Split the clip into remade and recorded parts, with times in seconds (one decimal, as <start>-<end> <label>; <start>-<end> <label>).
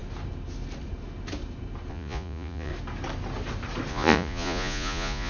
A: 0.0-1.9 recorded; 1.9-2.7 remade; 2.7-3.9 recorded; 3.9-5.3 remade